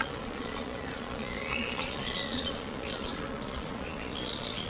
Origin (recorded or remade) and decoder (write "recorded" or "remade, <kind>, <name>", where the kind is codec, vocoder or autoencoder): remade, vocoder, Vocos